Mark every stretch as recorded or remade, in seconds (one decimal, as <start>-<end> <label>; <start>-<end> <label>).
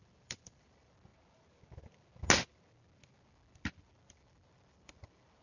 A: 0.0-1.1 remade; 1.1-3.3 recorded; 3.3-5.4 remade